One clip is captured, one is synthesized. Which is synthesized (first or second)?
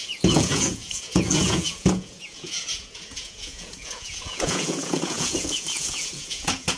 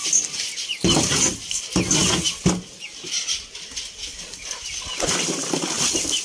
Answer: first